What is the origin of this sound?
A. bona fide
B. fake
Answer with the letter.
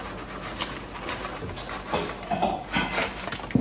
A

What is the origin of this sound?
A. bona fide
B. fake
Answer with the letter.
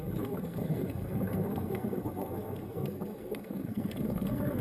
B